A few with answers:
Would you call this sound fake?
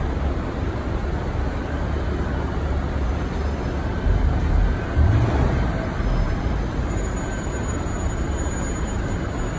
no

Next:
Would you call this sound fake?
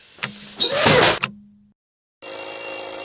no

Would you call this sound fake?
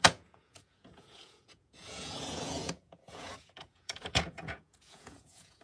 yes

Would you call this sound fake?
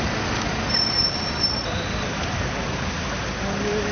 no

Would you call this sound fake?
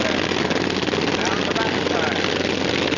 no